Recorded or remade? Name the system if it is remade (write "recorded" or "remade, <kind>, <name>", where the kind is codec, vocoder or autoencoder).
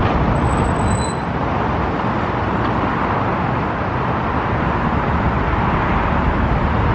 recorded